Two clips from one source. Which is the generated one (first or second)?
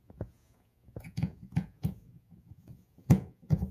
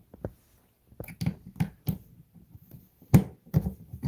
first